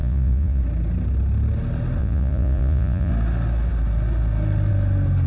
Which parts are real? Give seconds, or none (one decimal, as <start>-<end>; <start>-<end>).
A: 0.6-2.0; 3.1-5.3